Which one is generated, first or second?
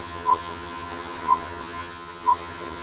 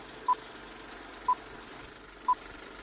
first